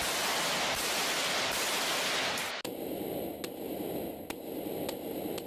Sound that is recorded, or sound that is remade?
recorded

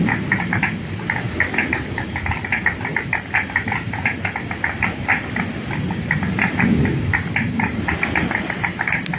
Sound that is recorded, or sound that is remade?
recorded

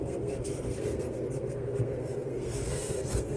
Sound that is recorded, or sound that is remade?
remade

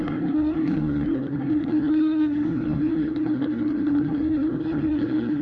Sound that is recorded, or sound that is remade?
remade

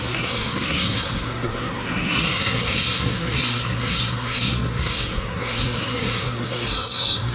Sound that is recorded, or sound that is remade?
remade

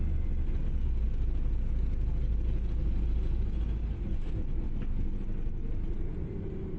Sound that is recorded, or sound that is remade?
recorded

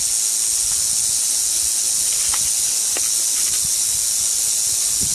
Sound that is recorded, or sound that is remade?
recorded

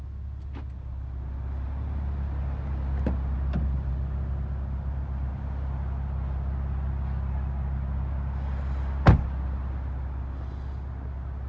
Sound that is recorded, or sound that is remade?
recorded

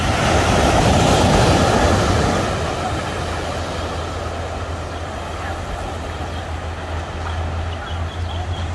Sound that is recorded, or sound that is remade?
recorded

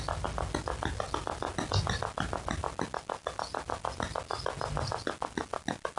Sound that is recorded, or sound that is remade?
recorded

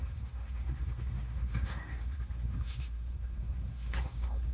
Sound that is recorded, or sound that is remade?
remade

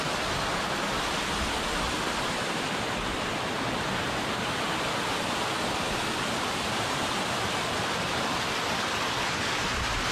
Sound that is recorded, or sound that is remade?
recorded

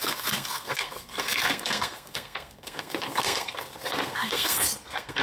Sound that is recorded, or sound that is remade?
remade